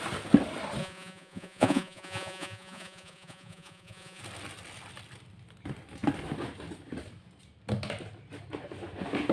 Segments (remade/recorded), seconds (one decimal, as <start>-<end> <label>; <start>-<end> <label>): 0.0-0.8 recorded; 0.8-4.2 remade; 4.2-9.3 recorded